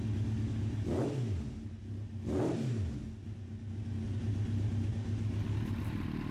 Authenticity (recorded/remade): recorded